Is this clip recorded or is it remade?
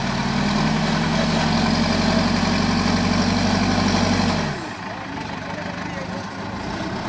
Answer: recorded